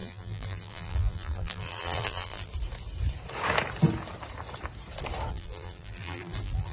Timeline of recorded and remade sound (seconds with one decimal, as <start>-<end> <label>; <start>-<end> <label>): 0.0-2.5 remade; 2.5-5.3 recorded; 5.3-6.7 remade